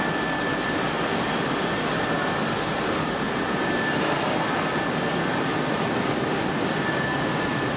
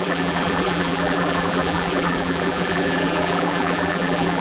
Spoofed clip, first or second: second